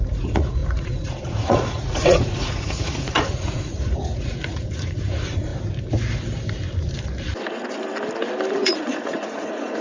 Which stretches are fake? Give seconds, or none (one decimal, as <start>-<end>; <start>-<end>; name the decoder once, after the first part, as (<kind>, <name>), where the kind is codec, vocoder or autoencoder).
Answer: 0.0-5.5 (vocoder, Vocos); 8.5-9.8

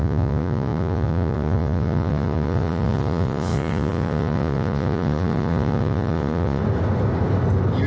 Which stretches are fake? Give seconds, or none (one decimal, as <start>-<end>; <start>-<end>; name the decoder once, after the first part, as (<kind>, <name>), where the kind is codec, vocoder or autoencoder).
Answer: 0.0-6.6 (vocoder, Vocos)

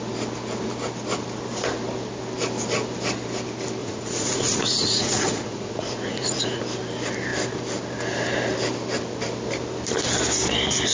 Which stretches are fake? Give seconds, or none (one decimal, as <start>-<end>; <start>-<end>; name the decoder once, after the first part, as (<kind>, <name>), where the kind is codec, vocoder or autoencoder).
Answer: 3.8-6.6 (vocoder, Vocos)

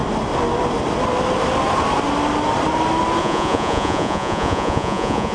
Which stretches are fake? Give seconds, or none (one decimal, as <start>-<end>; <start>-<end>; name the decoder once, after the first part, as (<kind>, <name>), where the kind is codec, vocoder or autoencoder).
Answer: 3.2-5.3 (vocoder, Vocos)

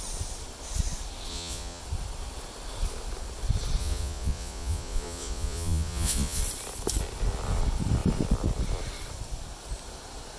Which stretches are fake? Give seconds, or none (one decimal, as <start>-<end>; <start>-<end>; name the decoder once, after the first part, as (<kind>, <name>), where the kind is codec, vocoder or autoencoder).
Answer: 1.3-1.8 (vocoder, Vocos); 3.8-6.4

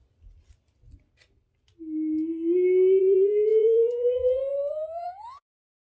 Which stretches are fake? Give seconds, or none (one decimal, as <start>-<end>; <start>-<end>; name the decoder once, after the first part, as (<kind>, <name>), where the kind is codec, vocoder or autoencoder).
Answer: 3.0-6.0 (vocoder, Vocos)

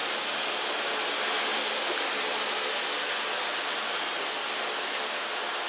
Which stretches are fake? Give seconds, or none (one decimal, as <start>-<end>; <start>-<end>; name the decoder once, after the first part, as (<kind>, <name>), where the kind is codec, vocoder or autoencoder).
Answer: none